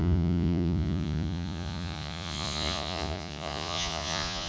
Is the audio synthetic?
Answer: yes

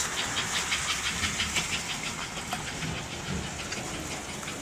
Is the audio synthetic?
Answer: no